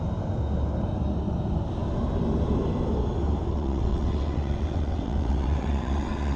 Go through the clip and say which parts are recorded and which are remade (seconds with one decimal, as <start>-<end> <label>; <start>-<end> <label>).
0.0-3.5 recorded; 3.5-6.4 remade